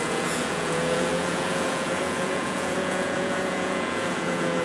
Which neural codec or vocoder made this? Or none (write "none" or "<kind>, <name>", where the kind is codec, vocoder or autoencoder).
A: vocoder, Vocos